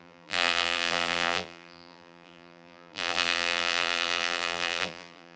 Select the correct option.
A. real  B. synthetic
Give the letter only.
B